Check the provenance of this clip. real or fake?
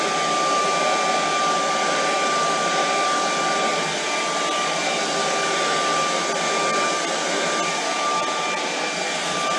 real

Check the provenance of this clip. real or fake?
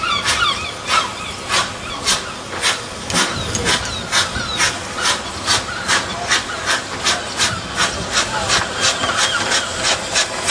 real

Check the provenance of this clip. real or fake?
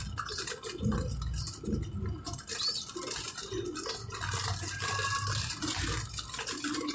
real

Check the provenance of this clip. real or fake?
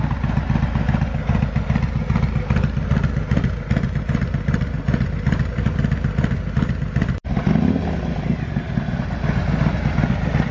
real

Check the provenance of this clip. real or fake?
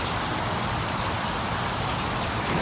real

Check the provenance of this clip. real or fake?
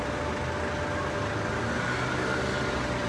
real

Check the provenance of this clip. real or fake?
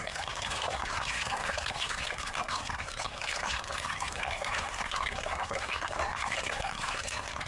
fake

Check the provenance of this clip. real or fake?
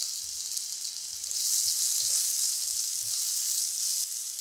real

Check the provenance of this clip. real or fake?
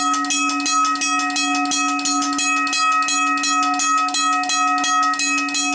real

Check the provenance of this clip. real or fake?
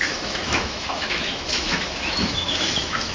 fake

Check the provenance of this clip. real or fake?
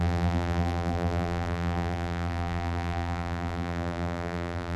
fake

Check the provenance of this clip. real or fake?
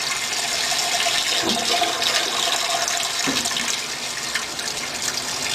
real